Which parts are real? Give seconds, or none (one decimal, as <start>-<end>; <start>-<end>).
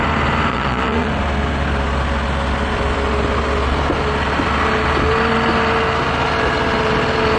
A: 0.0-0.5; 1.1-7.4